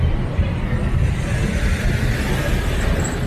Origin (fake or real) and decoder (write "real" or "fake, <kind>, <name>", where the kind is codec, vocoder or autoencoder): real